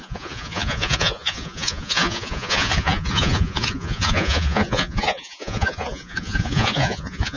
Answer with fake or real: fake